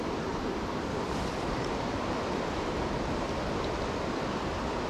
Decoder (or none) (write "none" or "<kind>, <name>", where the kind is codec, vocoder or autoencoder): none